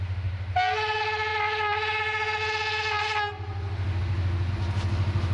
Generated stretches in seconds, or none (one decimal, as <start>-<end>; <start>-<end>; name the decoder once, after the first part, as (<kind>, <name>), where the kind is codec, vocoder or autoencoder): none